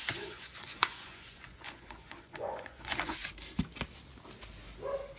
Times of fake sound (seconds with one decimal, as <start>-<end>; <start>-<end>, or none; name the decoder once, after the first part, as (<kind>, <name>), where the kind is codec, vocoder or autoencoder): 0.0-3.1 (vocoder, Vocos)